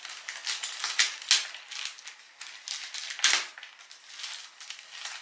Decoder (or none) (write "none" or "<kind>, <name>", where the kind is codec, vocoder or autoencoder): none